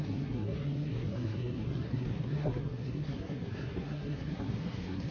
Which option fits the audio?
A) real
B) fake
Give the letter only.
B